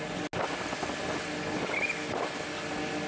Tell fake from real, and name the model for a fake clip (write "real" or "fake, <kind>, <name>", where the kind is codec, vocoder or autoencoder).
real